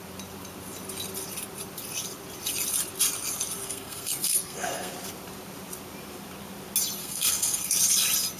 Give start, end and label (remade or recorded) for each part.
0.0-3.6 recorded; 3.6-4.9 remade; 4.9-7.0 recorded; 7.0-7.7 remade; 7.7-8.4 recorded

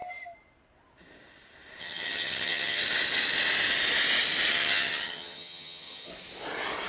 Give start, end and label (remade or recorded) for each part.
0.0-1.8 recorded; 1.8-2.8 remade; 2.8-4.5 recorded; 4.5-6.1 remade; 6.1-6.9 recorded

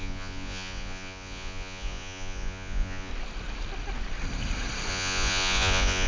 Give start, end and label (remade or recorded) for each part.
0.0-3.1 remade; 3.1-4.9 recorded; 4.9-6.1 remade

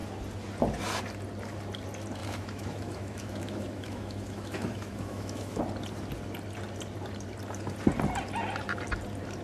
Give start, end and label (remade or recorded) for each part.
0.0-2.2 recorded; 2.2-5.6 remade; 5.6-9.4 recorded

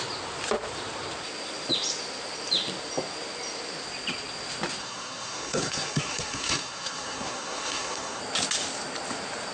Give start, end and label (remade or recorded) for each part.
0.0-4.8 recorded; 4.8-8.2 remade; 8.2-9.5 recorded

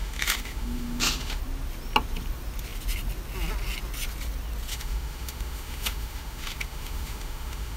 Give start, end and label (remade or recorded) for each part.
0.0-1.4 remade; 1.4-4.7 recorded; 4.7-7.8 remade